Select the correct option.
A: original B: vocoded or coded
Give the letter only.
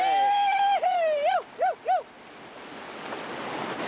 A